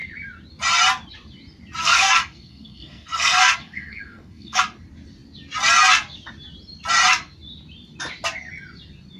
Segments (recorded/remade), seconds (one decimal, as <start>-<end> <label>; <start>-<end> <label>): 0.0-1.8 recorded; 1.8-4.6 remade; 4.6-9.2 recorded